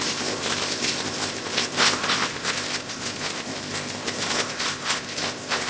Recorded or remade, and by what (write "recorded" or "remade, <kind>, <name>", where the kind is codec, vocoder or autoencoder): remade, codec, ZipCodec